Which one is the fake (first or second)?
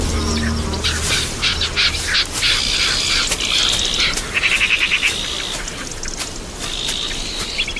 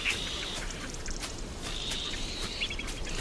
second